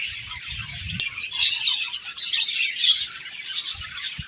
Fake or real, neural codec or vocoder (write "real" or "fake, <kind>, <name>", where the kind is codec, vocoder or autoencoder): real